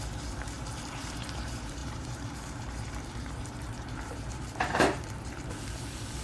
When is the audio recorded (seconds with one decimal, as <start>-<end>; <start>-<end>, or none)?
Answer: none